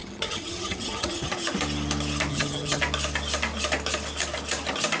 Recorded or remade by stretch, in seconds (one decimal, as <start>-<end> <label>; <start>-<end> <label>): 0.0-1.3 remade; 1.3-2.3 recorded; 2.3-2.8 remade; 2.8-5.0 recorded